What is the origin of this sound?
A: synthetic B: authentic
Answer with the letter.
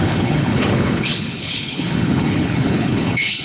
A